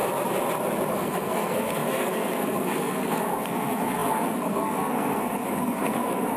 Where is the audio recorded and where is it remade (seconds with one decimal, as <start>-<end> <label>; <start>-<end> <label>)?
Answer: 0.0-0.9 recorded; 0.9-6.4 remade